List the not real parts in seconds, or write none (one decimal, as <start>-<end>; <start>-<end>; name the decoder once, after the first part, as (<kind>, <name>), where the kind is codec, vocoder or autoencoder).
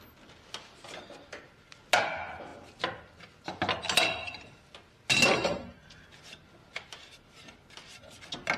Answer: none